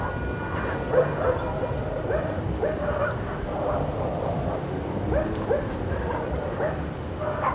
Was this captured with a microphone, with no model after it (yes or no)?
yes